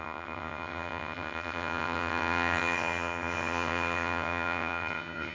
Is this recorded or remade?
remade